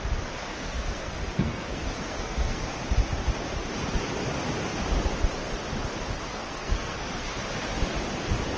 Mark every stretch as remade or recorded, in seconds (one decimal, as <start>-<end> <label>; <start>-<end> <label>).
0.0-0.4 recorded; 0.4-2.6 remade; 2.6-6.3 recorded; 6.3-7.3 remade; 7.3-8.6 recorded